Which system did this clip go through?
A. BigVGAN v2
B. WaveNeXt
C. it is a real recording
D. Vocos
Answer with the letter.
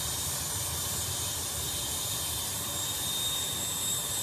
A